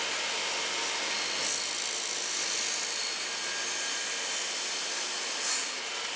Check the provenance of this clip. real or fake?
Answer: fake